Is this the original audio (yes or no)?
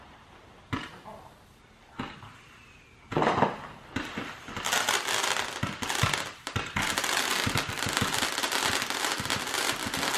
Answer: yes